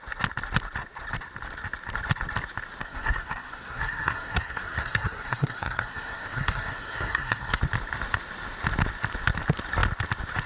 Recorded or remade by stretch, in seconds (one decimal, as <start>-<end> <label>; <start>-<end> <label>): 0.0-2.8 recorded; 2.8-7.6 remade; 7.6-10.5 recorded